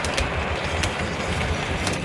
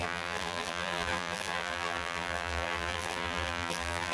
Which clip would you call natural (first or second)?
first